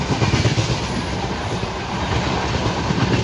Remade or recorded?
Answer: recorded